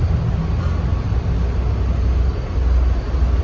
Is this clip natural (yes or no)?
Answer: yes